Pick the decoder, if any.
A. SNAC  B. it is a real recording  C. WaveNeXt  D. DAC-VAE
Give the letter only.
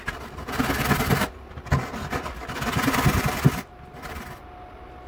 B